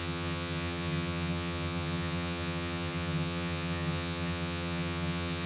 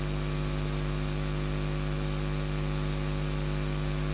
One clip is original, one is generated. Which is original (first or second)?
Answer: second